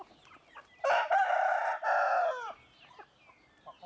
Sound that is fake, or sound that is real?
real